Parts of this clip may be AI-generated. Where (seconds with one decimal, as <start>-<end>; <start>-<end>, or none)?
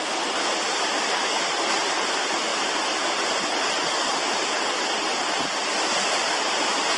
none